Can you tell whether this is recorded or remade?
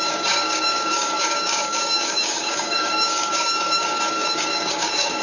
remade